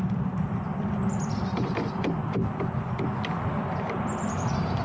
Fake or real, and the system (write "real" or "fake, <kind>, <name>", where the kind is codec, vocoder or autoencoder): real